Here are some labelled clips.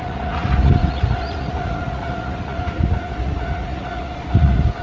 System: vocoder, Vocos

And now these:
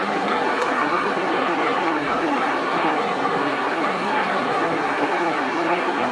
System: codec, SNAC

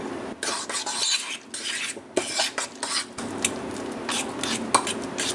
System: none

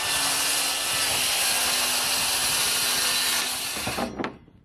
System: none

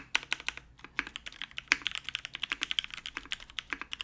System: none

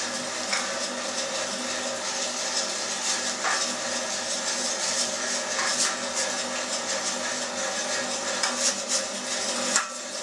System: none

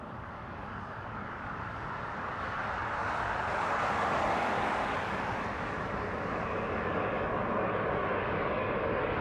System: codec, DAC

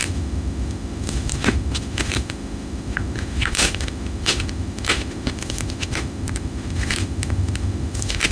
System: autoencoder, DAC-VAE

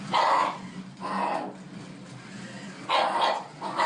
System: none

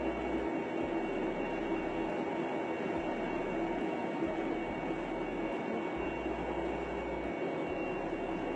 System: none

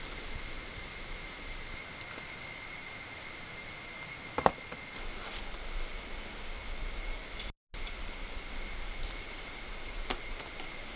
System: none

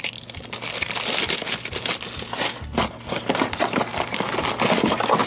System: none